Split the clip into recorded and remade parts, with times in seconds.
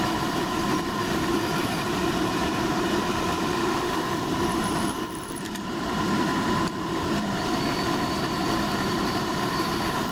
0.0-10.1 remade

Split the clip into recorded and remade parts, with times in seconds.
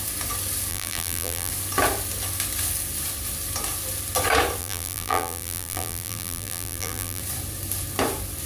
0.0-0.7 recorded; 0.7-1.5 remade; 1.5-4.6 recorded; 4.6-7.2 remade; 7.2-8.5 recorded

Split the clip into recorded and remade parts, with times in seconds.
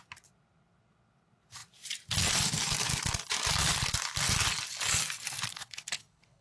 0.0-5.5 recorded; 5.5-6.4 remade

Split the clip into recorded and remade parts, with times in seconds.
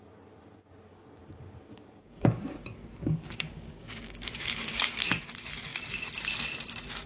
0.0-0.9 recorded; 0.9-5.2 remade; 5.2-7.1 recorded